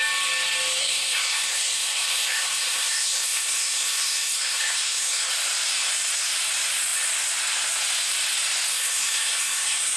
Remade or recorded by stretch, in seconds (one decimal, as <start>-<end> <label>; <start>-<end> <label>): 0.0-0.8 recorded; 0.8-5.3 remade; 5.3-8.7 recorded; 8.7-10.0 remade